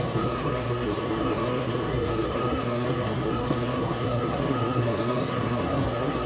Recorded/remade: remade